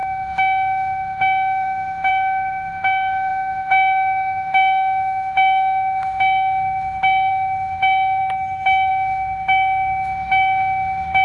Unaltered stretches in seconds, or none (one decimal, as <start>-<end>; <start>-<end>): 8.2-8.9